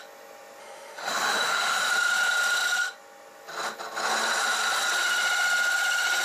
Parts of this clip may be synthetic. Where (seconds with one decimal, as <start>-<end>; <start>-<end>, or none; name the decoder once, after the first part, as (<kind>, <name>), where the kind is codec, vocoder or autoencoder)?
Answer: 0.6-1.9 (autoencoder, DAC-VAE)